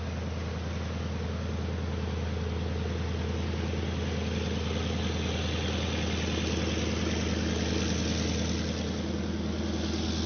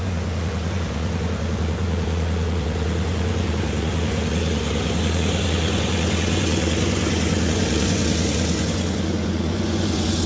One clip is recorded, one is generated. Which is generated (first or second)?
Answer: second